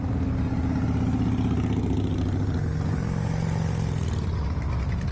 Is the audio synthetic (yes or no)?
no